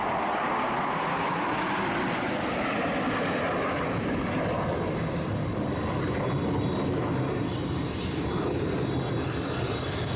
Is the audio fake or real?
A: real